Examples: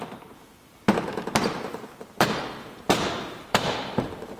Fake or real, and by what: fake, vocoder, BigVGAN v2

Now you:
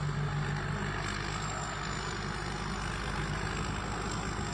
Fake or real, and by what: real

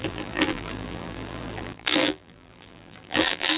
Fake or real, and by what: fake, vocoder, BigVGAN v2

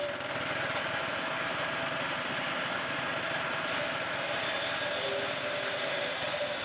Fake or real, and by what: real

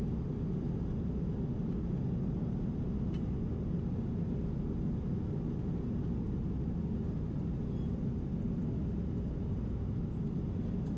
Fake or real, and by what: real